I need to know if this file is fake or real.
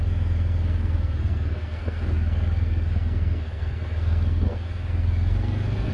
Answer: fake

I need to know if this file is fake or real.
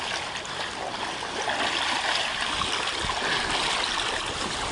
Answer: real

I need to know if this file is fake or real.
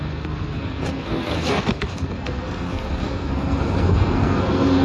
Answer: fake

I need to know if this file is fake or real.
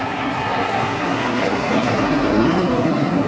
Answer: fake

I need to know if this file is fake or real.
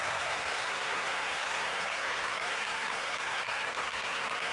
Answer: fake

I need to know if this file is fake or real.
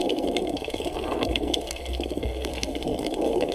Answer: fake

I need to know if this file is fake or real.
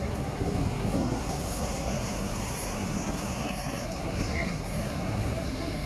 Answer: fake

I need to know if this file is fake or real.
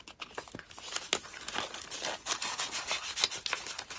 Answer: real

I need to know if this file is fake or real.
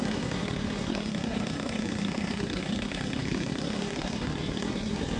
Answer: fake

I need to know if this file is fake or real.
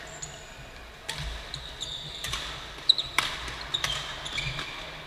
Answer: real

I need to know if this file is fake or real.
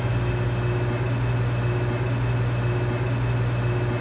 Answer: real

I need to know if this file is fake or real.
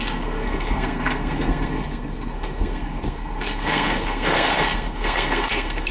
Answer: fake